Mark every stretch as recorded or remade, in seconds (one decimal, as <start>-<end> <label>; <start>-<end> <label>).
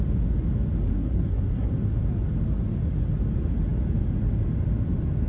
0.0-0.9 recorded; 0.9-1.7 remade; 1.7-5.3 recorded